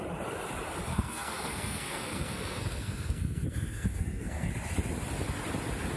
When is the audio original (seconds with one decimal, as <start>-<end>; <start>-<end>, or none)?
0.0-0.9; 4.5-6.0